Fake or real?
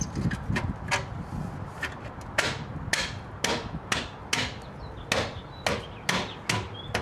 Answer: real